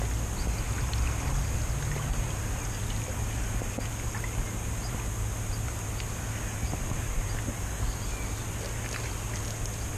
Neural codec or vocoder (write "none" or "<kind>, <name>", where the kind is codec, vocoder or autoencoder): none